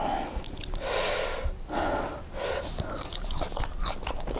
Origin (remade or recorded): recorded